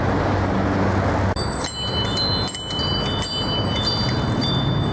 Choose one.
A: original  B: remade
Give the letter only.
A